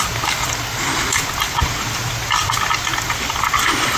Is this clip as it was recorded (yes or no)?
no